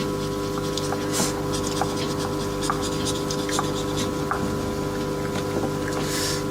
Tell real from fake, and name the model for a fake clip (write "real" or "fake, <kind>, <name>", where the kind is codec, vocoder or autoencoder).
real